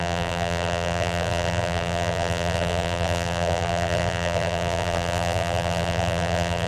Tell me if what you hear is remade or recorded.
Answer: remade